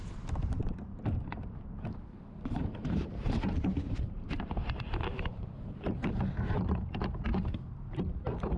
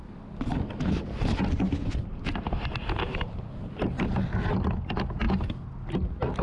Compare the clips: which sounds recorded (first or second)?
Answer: second